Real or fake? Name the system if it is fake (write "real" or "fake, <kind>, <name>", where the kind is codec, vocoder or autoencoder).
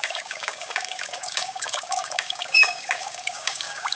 fake, codec, DAC